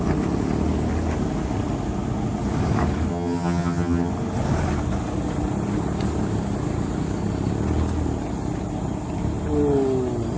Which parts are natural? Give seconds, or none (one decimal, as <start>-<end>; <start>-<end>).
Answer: 0.0-3.1; 4.1-10.4